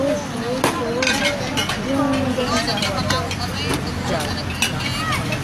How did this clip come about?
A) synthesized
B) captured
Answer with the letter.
B